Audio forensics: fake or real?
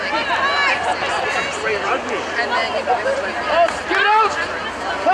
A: real